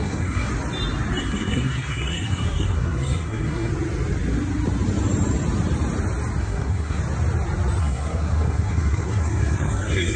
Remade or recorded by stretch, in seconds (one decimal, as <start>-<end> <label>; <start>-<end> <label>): 0.0-0.5 remade; 0.5-1.2 recorded; 1.2-3.7 remade; 3.7-6.4 recorded; 6.4-7.0 remade; 7.0-7.8 recorded; 7.8-10.2 remade